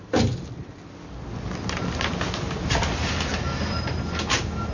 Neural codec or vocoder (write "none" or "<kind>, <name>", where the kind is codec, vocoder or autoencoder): none